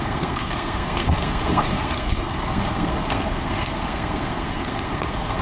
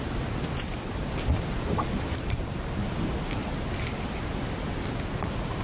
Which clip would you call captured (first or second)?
second